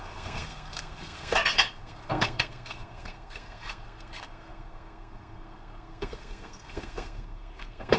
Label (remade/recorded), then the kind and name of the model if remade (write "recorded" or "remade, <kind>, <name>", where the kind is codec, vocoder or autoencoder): remade, codec, SNAC